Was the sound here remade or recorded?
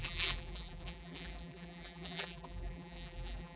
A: remade